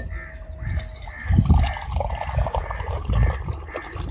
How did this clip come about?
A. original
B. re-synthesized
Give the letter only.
A